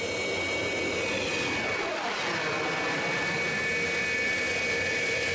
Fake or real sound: real